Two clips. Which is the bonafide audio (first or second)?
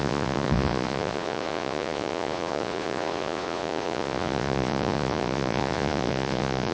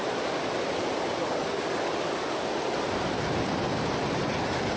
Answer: second